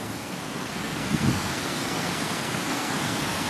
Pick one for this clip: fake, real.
fake